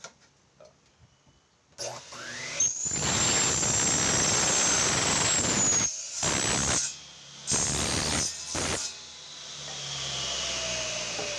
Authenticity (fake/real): real